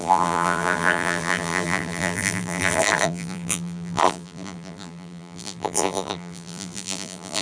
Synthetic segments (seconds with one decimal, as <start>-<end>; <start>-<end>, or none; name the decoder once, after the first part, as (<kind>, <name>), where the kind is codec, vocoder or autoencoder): 0.0-7.4 (vocoder, BigVGAN v2)